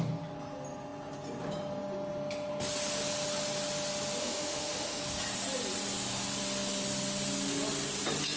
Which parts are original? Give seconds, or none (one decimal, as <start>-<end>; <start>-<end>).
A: 0.0-4.2; 5.0-8.4